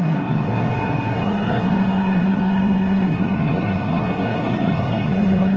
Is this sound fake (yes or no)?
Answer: yes